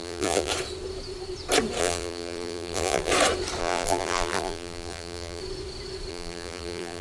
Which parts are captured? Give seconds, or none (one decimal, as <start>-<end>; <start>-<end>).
0.5-1.8; 3.1-3.6; 5.4-6.1